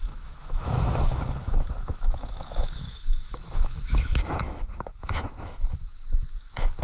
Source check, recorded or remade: remade